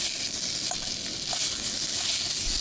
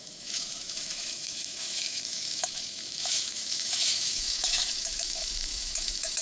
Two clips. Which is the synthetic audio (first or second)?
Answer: second